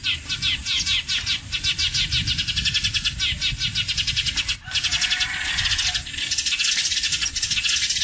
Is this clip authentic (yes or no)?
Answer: yes